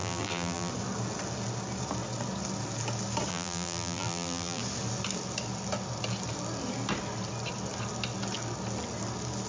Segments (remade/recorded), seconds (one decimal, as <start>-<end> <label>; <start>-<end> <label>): 0.0-0.7 remade; 0.7-3.3 recorded; 3.3-4.6 remade; 4.6-9.5 recorded